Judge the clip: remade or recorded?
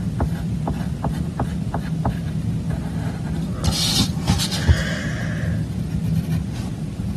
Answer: recorded